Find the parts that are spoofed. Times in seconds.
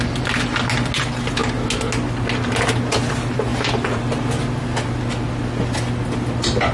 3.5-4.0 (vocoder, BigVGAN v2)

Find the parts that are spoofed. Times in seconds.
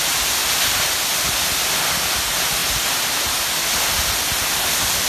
0.4-1.6 (vocoder, BigVGAN v2)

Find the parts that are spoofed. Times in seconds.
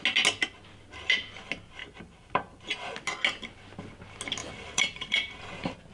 1.8-2.6 (vocoder, BigVGAN v2); 4.4-5.4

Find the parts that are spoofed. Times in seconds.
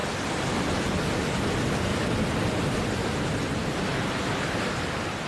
1.9-2.6 (vocoder, BigVGAN v2); 3.6-4.2